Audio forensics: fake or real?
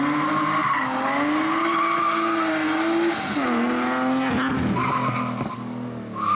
real